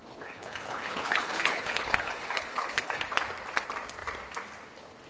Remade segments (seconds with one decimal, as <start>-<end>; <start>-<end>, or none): 0.0-3.1